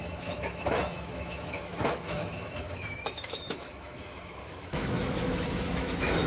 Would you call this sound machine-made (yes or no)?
yes